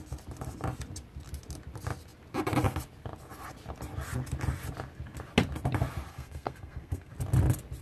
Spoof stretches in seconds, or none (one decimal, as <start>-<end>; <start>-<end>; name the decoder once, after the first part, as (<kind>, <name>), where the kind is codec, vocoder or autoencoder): 6.1-7.1 (codec, SNAC)